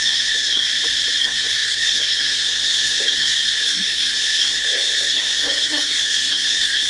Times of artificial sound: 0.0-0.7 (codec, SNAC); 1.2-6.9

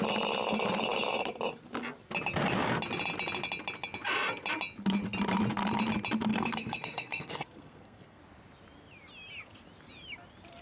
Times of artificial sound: 6.3-8.2 (codec, SNAC)

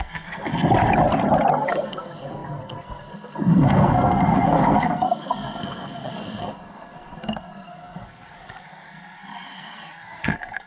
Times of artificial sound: 0.0-0.5 (codec, SNAC); 1.7-10.7

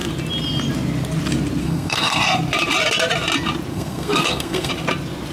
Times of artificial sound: 1.6-2.2 (codec, SNAC); 3.7-4.7

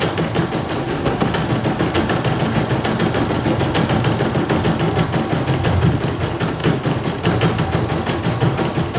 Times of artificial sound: 0.8-1.3 (codec, SNAC)

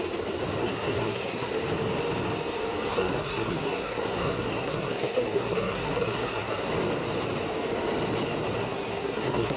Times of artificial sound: 0.6-1.5 (codec, SNAC); 2.9-6.7; 8.6-9.6

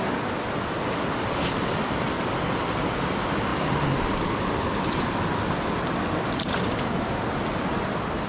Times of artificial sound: none

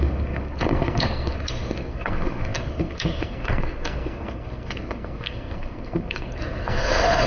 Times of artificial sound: 0.0-7.3 (codec, SNAC)